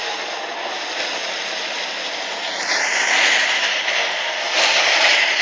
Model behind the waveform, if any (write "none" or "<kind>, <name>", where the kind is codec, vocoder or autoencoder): none